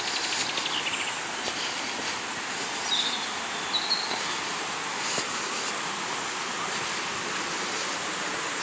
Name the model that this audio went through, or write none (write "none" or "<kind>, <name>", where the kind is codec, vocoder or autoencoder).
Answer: none